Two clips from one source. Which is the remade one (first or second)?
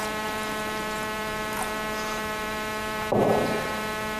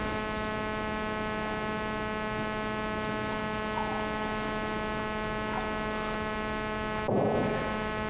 first